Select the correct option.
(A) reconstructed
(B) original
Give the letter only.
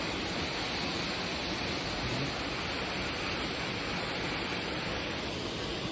B